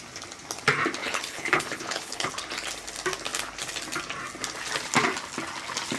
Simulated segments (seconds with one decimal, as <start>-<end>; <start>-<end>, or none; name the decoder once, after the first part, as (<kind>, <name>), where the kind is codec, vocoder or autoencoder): 1.0-2.3 (codec, HILCodec)